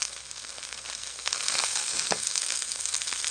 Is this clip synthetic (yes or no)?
yes